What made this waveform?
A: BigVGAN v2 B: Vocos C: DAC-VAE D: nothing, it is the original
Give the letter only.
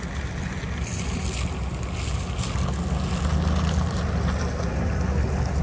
D